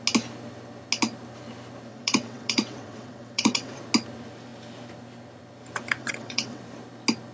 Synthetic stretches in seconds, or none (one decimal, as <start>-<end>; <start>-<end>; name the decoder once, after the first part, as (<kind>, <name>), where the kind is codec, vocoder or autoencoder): 1.9-3.8 (vocoder, WaveNeXt); 6.0-6.6